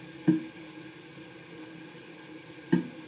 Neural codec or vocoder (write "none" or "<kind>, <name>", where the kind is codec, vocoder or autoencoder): none